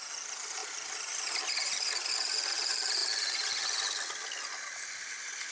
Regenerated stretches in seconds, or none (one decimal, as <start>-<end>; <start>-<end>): 0.6-2.1